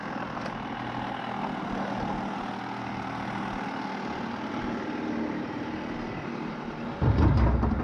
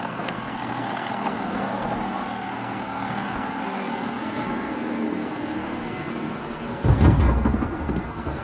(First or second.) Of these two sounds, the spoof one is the second